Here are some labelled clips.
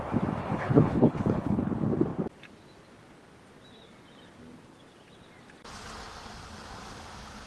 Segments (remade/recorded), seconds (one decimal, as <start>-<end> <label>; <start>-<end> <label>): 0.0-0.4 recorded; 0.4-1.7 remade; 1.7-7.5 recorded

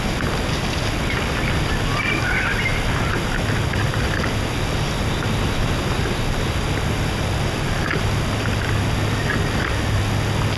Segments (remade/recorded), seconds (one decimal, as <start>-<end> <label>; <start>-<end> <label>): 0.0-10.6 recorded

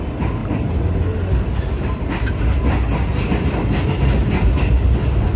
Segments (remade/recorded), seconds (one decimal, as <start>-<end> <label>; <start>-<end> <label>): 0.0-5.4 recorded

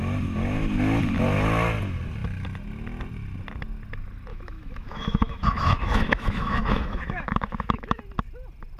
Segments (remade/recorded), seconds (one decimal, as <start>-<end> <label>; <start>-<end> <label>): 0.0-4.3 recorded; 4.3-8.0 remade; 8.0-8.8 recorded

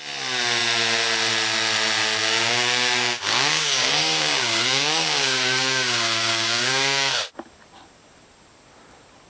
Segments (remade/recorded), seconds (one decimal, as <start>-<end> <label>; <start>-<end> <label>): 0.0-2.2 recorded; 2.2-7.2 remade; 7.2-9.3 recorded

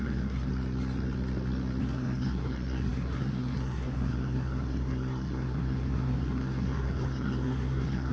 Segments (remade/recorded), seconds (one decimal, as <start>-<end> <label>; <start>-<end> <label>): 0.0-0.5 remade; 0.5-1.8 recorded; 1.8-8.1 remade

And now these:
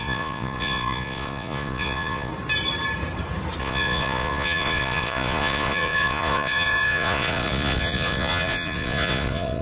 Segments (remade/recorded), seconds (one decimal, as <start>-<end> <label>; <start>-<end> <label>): 0.0-2.3 remade; 2.3-3.6 recorded; 3.6-9.6 remade

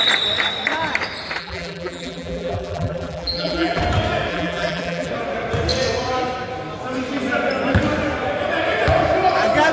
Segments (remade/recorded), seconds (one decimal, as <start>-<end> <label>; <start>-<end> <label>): 0.0-1.4 recorded; 1.4-3.8 remade; 3.8-4.3 recorded; 4.3-5.1 remade; 5.1-9.7 recorded